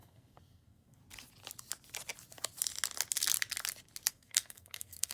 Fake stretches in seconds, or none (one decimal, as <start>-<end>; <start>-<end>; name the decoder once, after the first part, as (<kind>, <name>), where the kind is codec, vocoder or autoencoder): 0.0-1.0 (codec, SNAC); 4.1-5.1